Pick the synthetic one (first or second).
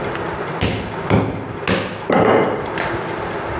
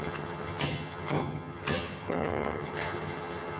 second